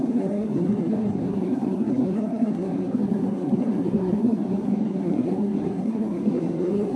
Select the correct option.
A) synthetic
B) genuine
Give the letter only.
A